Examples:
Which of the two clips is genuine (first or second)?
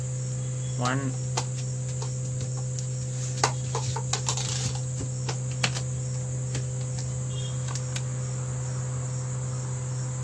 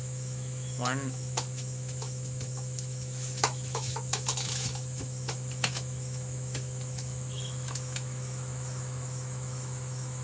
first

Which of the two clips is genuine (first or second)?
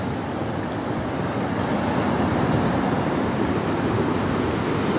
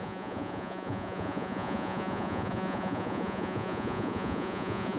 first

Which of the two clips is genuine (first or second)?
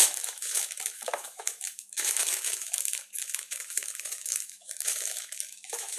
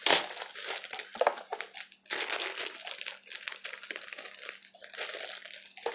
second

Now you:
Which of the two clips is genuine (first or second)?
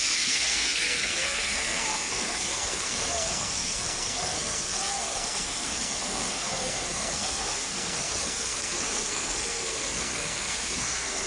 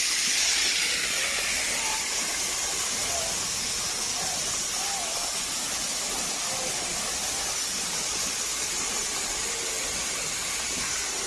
second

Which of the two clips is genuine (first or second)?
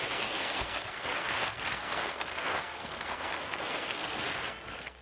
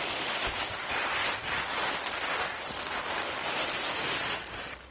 second